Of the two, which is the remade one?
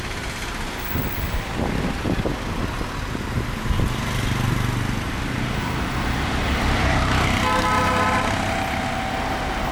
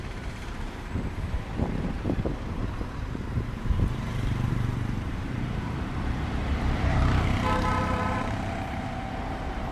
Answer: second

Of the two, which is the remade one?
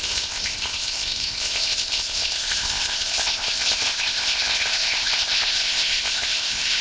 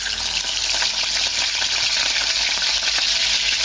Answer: first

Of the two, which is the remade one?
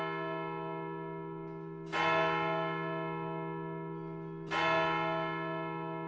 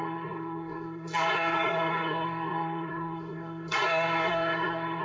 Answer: second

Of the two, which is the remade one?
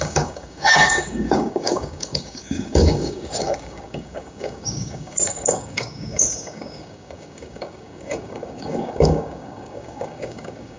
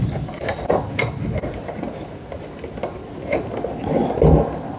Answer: first